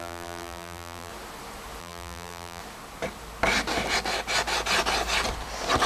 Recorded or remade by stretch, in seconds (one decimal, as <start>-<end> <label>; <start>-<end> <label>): 0.0-1.1 remade; 1.1-1.8 recorded; 1.8-2.6 remade; 2.6-5.9 recorded